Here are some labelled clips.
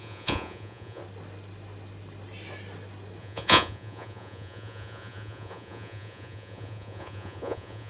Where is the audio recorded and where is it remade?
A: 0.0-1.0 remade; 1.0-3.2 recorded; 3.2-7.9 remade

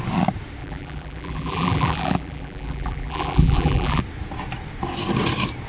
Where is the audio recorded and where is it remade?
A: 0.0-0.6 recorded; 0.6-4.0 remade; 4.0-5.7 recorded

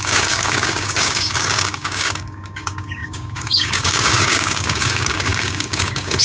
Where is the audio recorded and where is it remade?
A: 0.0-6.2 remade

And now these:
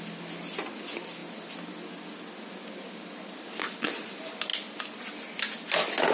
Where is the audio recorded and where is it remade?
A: 0.0-6.1 recorded